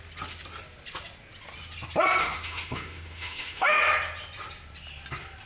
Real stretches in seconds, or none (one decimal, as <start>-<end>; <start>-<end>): 0.0-2.2; 3.8-5.5